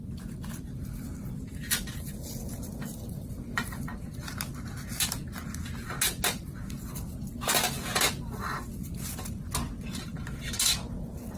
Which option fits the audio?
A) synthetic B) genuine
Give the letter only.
B